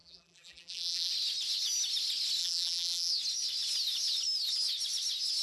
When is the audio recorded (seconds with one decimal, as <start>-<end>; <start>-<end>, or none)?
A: 1.1-2.4; 3.1-5.4